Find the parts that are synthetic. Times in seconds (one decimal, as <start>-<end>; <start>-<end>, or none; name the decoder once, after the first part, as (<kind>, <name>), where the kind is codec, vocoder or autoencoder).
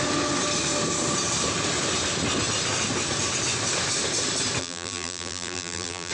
4.6-6.1 (vocoder, BigVGAN v2)